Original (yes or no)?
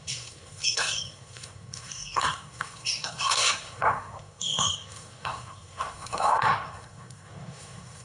no